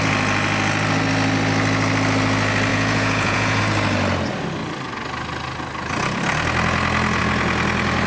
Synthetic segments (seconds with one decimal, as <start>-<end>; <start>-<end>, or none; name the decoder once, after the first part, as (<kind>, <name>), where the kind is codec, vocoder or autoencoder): 2.7-3.6 (vocoder, Vocos)